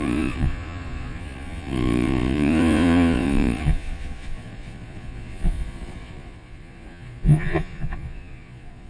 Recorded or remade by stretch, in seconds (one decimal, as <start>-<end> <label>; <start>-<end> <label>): 0.0-8.9 remade